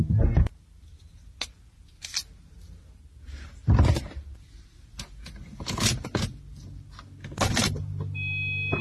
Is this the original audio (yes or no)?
yes